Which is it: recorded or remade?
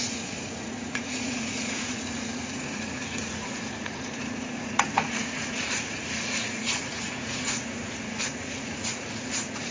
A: remade